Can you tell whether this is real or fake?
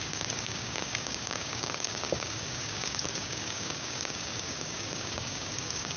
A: fake